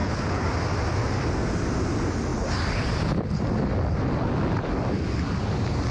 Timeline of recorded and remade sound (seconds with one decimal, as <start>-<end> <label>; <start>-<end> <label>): 0.0-0.5 remade; 0.5-5.9 recorded